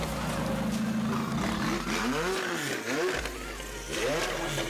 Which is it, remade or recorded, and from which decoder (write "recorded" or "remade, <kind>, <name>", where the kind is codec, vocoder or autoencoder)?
recorded